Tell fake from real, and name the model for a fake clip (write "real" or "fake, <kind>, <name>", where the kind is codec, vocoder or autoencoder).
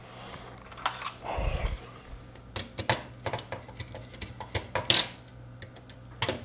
real